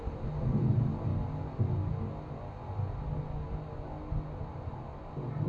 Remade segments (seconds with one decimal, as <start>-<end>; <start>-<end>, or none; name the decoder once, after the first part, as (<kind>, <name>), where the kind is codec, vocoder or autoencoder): 0.0-1.1 (vocoder, BigVGAN v2); 4.4-5.5